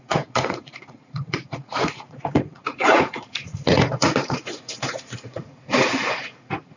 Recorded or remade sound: remade